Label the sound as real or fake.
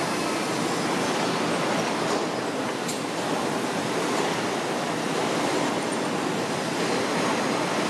real